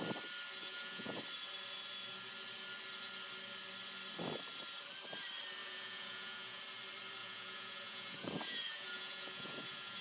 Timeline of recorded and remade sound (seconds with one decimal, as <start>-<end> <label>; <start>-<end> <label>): 0.0-0.6 recorded; 0.6-1.2 remade; 1.2-5.6 recorded; 5.6-6.6 remade; 6.6-7.2 recorded; 7.2-10.0 remade